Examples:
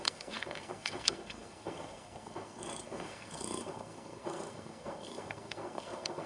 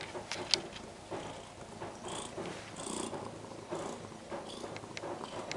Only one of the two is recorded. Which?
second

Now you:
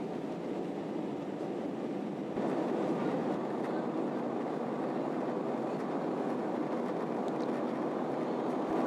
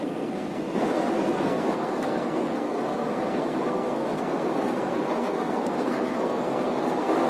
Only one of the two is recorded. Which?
first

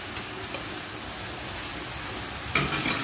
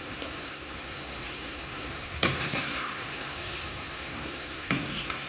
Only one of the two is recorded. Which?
first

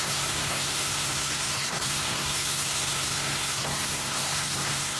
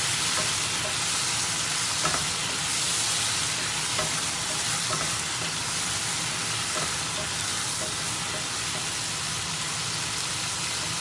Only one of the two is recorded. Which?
second